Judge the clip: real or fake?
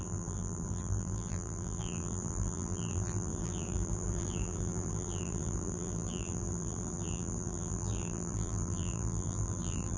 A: fake